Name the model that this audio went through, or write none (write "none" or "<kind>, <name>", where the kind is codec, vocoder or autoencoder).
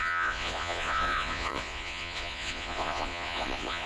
vocoder, Vocos